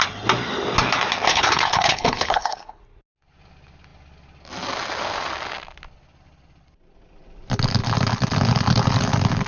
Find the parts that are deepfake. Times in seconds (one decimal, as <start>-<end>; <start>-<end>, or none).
1.3-2.8